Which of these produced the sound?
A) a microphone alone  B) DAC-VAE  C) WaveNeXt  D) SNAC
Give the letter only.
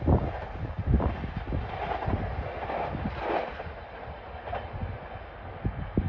A